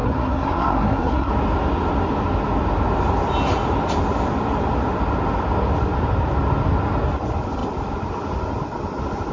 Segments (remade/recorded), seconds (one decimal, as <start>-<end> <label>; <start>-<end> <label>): 0.0-1.3 remade; 1.3-9.3 recorded